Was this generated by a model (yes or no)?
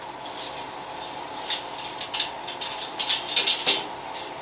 no